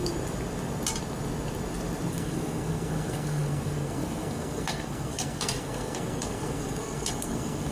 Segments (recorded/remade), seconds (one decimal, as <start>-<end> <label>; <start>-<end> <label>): 0.0-2.1 recorded; 2.1-7.7 remade